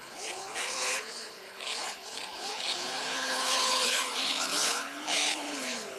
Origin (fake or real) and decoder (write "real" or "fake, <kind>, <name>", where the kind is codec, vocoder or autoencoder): fake, codec, HILCodec